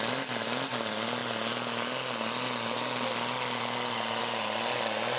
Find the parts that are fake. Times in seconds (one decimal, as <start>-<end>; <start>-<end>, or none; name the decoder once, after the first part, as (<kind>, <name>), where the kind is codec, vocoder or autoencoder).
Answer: none